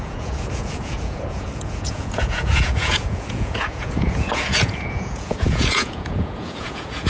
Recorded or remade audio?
remade